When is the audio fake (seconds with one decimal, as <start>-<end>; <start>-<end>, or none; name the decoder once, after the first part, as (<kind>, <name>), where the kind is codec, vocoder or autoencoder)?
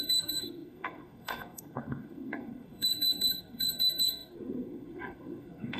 0.0-5.8 (codec, SNAC)